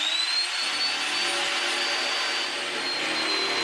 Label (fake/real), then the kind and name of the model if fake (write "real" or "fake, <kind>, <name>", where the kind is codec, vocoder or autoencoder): real